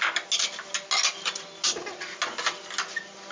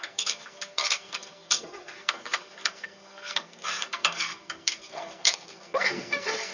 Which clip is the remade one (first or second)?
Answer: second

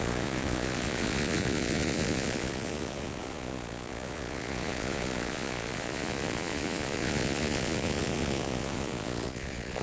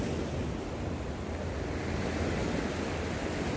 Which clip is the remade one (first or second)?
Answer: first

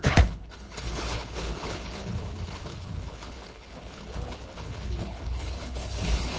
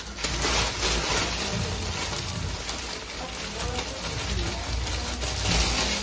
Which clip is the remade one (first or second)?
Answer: first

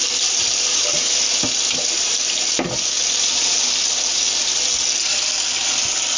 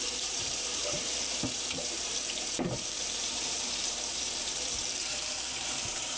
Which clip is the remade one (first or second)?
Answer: second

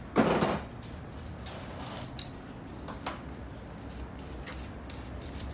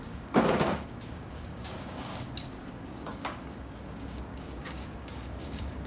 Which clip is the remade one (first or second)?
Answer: second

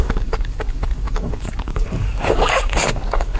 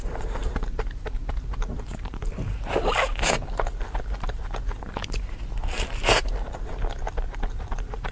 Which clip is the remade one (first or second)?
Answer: first